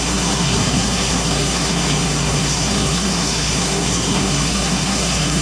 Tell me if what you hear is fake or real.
fake